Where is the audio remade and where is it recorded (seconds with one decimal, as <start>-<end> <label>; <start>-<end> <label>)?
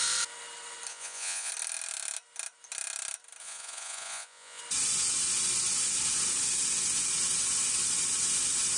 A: 0.0-0.9 recorded; 0.9-1.5 remade; 1.5-3.4 recorded; 3.4-4.6 remade; 4.6-8.8 recorded